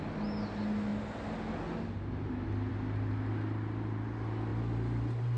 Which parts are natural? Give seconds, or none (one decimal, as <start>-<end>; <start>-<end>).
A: 0.0-5.4